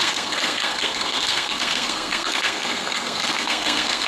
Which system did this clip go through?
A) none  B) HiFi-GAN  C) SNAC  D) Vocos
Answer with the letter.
C